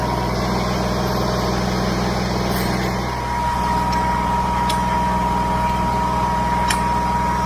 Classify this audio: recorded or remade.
recorded